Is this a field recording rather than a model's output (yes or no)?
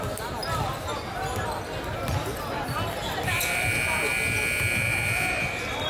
yes